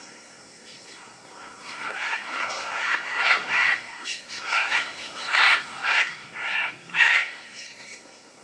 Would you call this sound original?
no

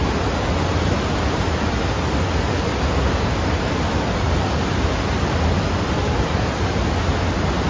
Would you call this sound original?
yes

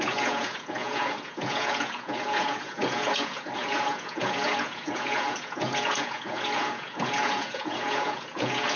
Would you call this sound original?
no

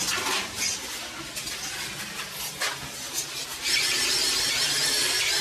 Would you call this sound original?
yes